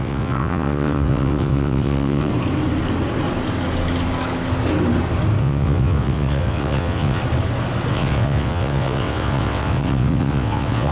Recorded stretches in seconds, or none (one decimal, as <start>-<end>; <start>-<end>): 2.3-5.4; 7.2-7.9